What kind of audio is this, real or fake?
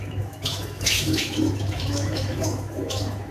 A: fake